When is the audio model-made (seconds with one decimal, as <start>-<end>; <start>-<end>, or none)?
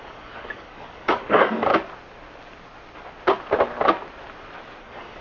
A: 0.0-1.7; 4.8-5.2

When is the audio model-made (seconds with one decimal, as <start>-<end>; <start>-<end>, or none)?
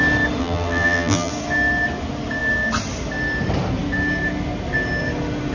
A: 0.4-1.3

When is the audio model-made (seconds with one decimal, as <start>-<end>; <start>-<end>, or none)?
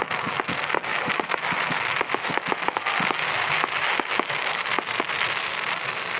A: 0.9-4.6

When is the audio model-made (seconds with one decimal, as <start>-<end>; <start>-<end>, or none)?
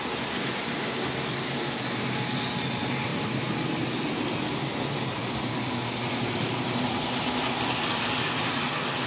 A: none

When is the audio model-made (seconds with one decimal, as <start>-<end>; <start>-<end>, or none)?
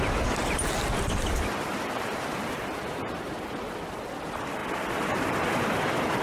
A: none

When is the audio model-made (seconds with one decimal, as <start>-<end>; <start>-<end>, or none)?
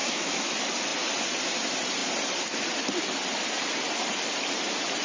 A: 0.0-0.5